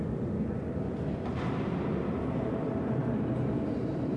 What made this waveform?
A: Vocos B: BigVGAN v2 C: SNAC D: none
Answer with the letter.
B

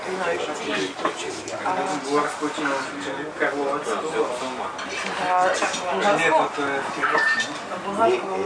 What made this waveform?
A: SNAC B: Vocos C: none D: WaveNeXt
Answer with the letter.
C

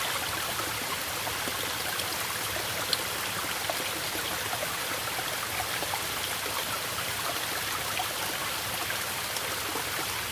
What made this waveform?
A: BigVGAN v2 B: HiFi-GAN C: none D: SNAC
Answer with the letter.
C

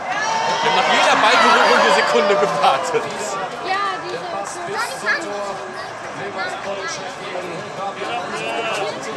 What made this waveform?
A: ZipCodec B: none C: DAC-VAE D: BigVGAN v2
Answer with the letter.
B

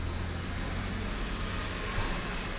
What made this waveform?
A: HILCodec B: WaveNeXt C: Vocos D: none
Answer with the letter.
D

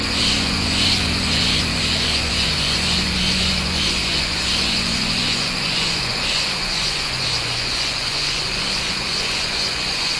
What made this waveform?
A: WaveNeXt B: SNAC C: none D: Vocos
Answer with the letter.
D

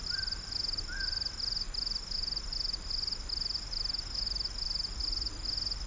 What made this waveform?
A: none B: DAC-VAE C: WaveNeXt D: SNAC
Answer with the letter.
A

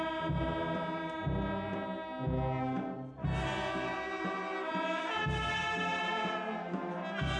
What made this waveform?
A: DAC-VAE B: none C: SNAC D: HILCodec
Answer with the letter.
B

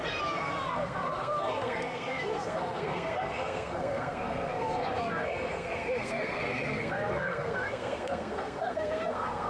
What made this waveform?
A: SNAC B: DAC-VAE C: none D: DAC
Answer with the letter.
A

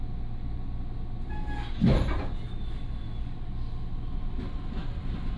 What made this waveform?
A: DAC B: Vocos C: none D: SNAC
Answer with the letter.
C